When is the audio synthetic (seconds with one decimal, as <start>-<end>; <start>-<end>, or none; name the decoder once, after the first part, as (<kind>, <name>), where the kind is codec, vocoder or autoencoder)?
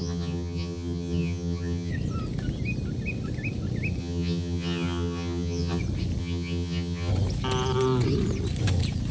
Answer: 0.0-1.9 (vocoder, HiFi-GAN); 4.0-5.8; 6.2-7.1